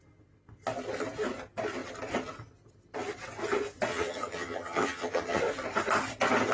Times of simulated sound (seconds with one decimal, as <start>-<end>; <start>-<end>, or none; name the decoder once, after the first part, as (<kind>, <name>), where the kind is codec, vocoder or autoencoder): 3.9-5.4 (vocoder, HiFi-GAN)